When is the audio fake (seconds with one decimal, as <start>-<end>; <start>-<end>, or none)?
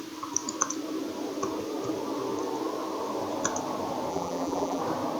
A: 4.1-4.8